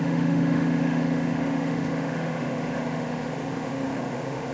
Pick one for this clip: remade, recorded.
remade